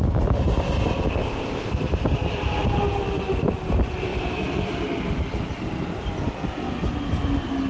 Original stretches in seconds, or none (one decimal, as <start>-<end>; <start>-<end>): 0.0-1.1; 1.7-7.7